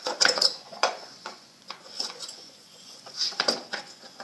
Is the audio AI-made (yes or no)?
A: yes